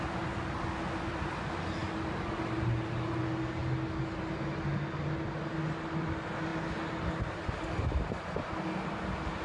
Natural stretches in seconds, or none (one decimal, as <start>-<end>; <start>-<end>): 0.0-9.4